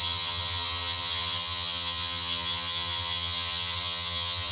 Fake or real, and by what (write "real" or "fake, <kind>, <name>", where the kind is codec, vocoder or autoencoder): fake, vocoder, HiFi-GAN